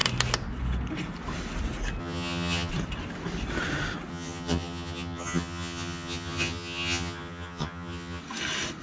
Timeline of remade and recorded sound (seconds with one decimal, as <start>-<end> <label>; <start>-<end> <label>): 0.0-2.0 recorded; 2.0-2.7 remade; 2.7-4.1 recorded; 4.1-8.2 remade; 8.2-8.8 recorded